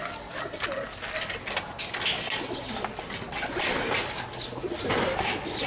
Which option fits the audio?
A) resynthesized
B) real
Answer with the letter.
B